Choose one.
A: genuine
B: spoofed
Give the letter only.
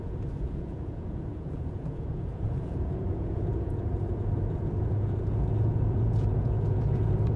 B